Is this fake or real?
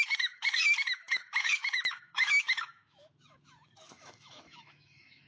fake